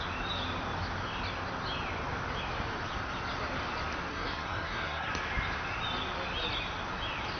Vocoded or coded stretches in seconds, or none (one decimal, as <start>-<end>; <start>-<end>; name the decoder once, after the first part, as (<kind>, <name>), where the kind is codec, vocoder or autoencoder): 4.1-5.1 (codec, SNAC)